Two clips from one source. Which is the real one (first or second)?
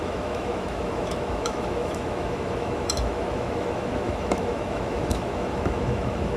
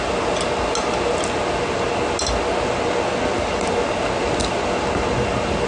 second